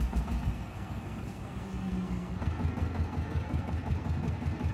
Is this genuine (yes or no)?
no